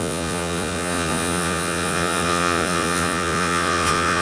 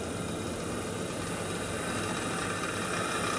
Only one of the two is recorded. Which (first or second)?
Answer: second